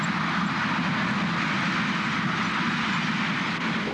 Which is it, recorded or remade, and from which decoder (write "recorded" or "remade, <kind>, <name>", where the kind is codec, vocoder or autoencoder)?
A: recorded